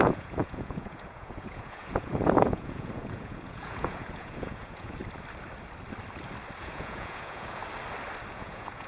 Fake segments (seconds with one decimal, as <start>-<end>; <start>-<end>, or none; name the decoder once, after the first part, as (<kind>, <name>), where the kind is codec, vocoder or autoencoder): 0.0-5.0 (vocoder, Vocos); 6.6-7.6; 8.3-8.9